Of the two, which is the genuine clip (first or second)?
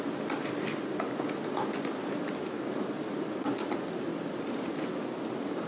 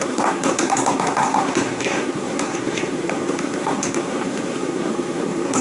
first